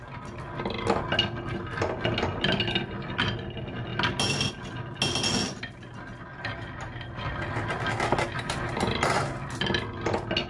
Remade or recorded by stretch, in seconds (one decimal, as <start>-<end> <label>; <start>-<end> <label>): 0.0-10.5 recorded